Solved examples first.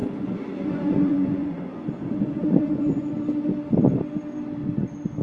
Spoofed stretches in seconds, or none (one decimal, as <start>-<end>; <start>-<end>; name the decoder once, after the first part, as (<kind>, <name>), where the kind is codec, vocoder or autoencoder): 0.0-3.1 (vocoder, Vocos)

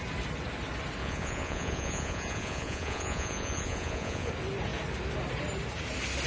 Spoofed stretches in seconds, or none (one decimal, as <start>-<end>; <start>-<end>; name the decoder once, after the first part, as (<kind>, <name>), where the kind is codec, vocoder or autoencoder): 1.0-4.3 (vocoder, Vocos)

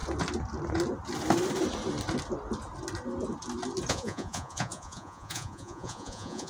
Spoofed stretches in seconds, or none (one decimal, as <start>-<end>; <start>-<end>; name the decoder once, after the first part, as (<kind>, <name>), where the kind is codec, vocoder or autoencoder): 3.9-6.5 (vocoder, Vocos)

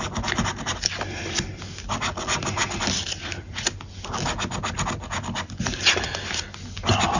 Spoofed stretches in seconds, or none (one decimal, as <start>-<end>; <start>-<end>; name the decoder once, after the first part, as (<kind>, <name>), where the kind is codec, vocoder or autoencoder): none